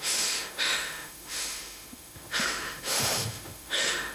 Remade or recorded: remade